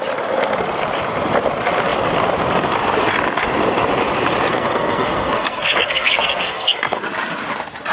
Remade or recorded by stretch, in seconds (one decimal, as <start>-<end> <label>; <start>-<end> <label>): 0.0-4.5 recorded; 4.5-7.0 remade; 7.0-7.9 recorded